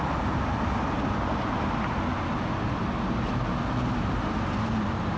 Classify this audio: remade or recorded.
recorded